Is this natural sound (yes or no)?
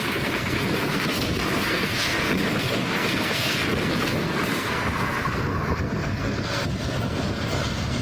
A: no